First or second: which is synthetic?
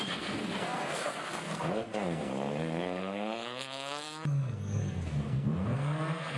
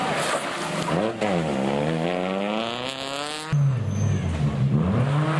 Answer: first